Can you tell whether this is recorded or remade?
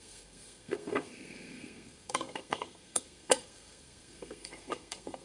remade